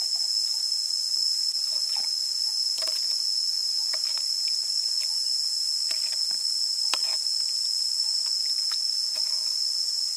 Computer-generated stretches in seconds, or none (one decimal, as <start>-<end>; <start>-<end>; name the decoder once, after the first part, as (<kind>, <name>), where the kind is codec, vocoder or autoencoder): none